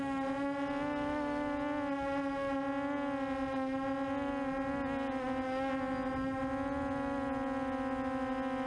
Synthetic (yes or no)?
no